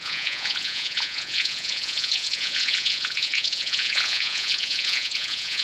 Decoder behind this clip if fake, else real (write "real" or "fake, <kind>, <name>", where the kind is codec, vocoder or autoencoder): fake, vocoder, Vocos